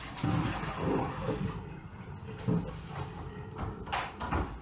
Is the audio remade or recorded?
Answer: recorded